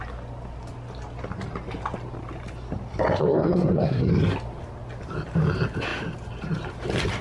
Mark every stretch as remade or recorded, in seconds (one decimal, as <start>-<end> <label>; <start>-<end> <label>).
0.0-3.2 recorded; 3.2-4.1 remade; 4.1-7.2 recorded